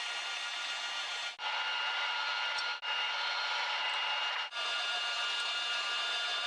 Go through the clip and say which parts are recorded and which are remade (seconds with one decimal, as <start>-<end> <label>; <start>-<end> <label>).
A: 0.0-6.5 recorded